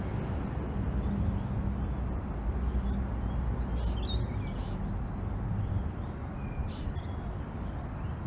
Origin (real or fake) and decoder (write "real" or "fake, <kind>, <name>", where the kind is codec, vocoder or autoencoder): real